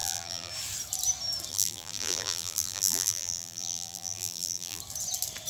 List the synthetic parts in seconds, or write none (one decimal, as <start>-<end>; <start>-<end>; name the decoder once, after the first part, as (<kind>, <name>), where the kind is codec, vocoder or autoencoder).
0.0-0.5 (vocoder, BigVGAN v2); 1.5-4.8